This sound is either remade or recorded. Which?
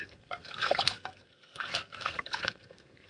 remade